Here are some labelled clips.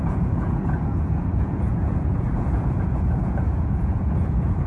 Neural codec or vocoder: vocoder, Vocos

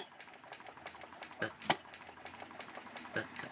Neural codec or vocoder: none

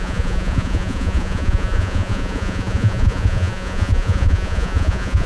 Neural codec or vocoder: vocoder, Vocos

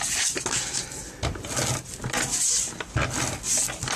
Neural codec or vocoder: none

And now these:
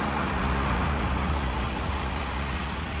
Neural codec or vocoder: vocoder, Vocos